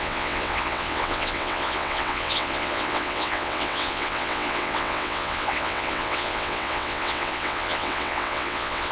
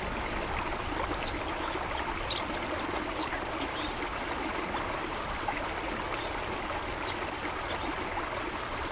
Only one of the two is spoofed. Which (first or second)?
first